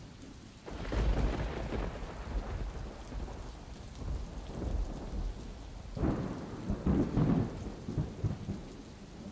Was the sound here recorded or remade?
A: recorded